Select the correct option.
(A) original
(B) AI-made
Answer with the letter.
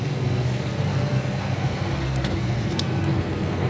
B